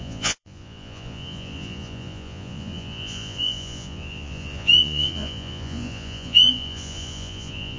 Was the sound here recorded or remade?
remade